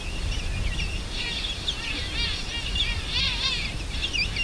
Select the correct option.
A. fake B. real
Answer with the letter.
B